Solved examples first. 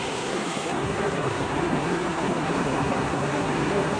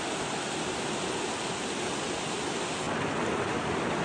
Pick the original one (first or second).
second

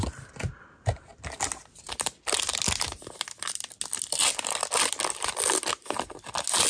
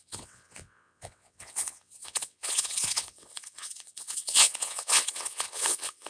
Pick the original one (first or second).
first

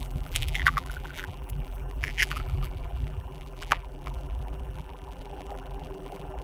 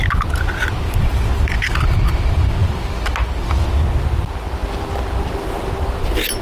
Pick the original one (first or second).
second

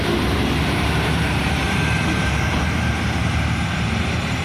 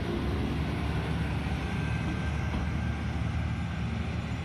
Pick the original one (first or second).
second